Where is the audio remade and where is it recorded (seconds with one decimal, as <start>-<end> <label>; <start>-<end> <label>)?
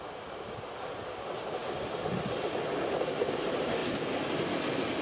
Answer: 0.0-5.0 recorded